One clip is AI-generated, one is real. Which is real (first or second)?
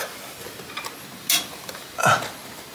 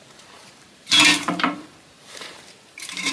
first